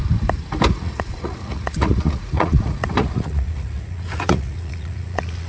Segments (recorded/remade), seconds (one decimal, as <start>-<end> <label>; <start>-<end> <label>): 0.0-0.7 recorded; 0.7-5.5 remade